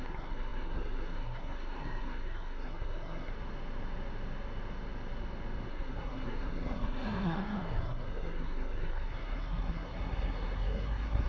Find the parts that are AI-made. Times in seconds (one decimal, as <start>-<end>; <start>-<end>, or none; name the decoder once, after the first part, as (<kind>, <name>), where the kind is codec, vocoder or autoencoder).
0.0-3.3 (codec, SNAC); 5.7-11.3